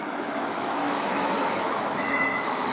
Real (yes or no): no